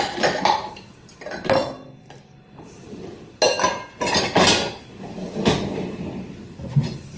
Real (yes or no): yes